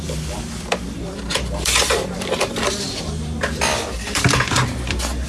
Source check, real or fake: fake